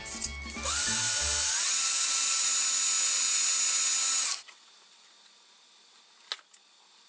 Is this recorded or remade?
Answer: recorded